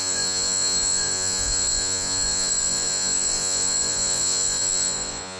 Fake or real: fake